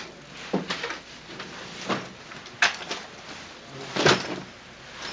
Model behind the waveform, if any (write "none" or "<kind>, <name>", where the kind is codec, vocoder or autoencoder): none